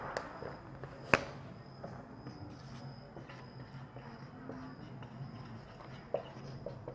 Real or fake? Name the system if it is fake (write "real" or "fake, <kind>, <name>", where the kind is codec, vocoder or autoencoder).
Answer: real